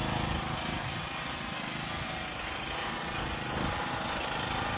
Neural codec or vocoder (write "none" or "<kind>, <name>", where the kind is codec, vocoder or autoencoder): none